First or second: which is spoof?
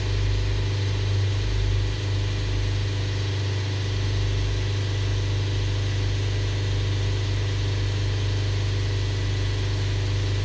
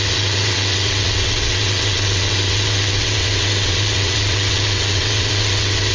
second